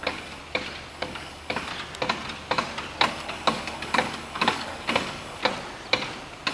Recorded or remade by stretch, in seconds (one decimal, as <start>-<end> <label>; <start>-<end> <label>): 0.0-0.4 remade; 0.4-0.9 recorded; 0.9-1.7 remade; 1.7-3.1 recorded; 3.1-5.4 remade; 5.4-6.5 recorded

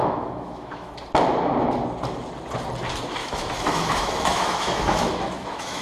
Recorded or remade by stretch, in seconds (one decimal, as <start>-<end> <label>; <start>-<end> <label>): 0.0-0.9 remade; 0.9-3.2 recorded; 3.2-5.8 remade

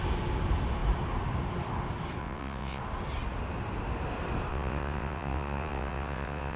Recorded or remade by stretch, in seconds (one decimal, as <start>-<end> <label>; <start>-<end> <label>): 0.0-2.2 recorded; 2.2-2.8 remade; 2.8-4.5 recorded; 4.5-6.6 remade

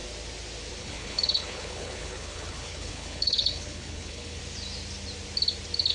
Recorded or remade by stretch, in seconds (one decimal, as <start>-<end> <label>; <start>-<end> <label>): 0.0-0.8 recorded; 0.8-4.4 remade; 4.4-5.9 recorded

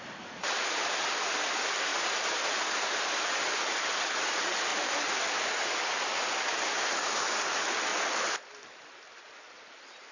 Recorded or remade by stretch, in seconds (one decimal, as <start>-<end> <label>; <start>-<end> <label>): 0.0-10.1 recorded